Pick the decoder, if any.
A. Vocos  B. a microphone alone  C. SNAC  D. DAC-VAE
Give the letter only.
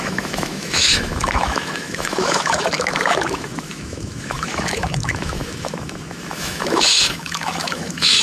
D